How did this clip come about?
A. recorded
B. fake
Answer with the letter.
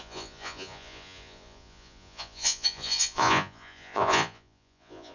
B